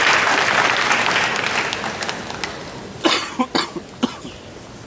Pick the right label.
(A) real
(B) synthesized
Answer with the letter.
A